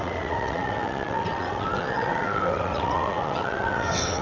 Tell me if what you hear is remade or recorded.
remade